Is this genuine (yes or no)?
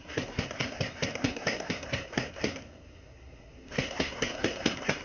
no